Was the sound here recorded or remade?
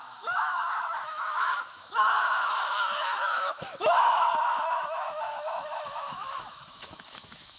remade